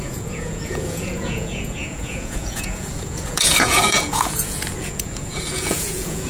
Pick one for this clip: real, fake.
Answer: fake